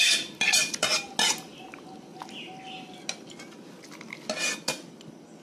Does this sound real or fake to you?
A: real